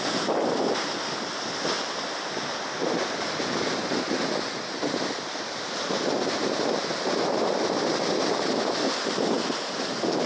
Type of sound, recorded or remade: recorded